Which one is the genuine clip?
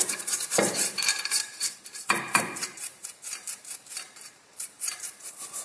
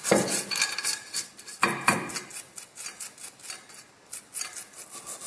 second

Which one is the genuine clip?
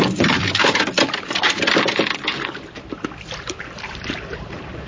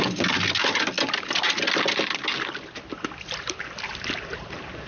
second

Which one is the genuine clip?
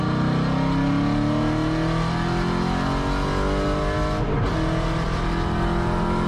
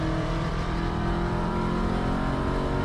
first